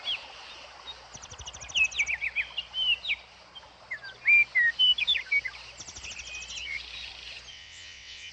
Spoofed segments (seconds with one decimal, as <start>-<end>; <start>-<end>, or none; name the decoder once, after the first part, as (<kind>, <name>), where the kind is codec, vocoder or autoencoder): 7.5-8.3 (vocoder, WaveNeXt)